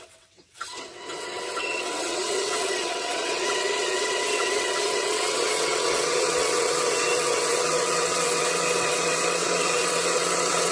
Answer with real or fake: fake